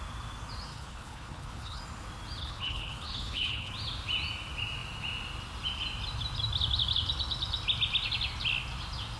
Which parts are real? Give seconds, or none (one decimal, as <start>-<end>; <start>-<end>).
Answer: 0.0-0.7; 1.8-2.4; 3.7-9.2